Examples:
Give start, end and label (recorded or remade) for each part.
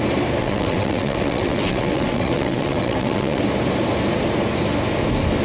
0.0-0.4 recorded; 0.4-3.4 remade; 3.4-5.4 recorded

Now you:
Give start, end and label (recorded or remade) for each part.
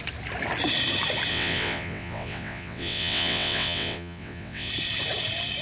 0.0-1.3 recorded; 1.3-4.7 remade; 4.7-5.6 recorded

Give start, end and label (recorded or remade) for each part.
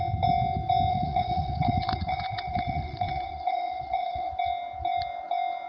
0.0-0.9 recorded; 0.9-4.3 remade; 4.3-5.7 recorded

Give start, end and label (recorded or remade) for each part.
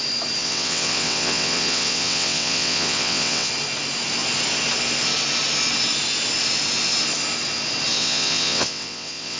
0.0-0.4 recorded; 0.4-3.5 remade; 3.5-7.9 recorded; 7.9-9.4 remade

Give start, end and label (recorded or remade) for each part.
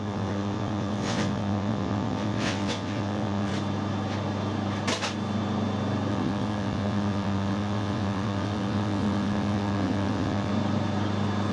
0.0-3.5 remade; 3.5-6.1 recorded; 6.1-10.5 remade; 10.5-11.5 recorded